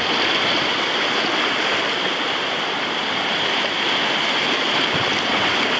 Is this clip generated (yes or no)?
no